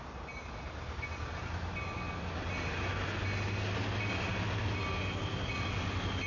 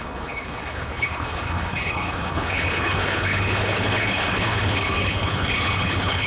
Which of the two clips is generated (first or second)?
second